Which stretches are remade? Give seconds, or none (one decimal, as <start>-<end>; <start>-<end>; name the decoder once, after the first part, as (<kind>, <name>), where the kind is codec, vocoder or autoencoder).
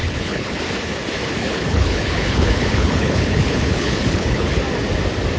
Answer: 0.0-0.6 (codec, HILCodec); 1.4-4.6